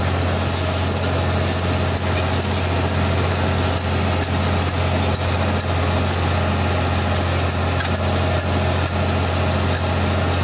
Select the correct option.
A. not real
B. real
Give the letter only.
B